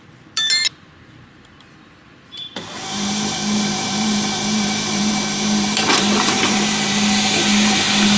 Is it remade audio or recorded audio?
remade